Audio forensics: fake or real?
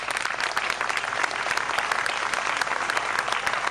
real